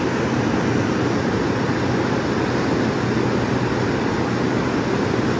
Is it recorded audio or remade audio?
recorded